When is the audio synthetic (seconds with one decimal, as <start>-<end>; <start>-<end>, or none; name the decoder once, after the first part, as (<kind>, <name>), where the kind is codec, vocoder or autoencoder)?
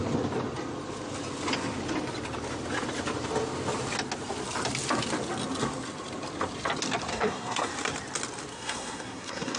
7.1-7.7 (codec, SNAC); 8.5-9.6